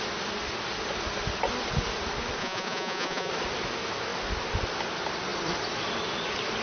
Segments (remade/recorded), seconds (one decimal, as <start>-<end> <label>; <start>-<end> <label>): 0.0-2.4 recorded; 2.4-3.3 remade; 3.3-6.6 recorded